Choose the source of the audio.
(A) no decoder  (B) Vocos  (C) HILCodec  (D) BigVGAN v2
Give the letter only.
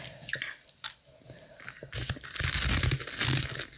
A